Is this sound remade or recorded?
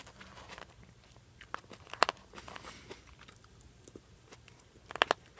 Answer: recorded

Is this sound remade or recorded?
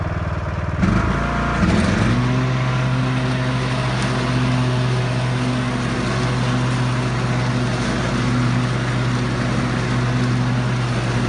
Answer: recorded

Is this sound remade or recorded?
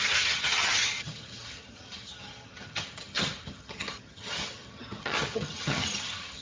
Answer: remade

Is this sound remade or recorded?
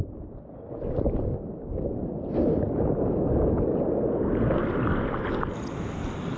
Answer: recorded